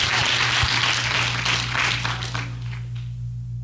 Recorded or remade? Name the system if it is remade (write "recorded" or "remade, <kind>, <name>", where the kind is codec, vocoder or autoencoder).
recorded